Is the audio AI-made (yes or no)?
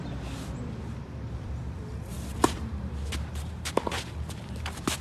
yes